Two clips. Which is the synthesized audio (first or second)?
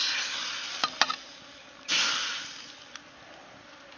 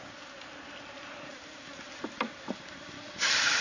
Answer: second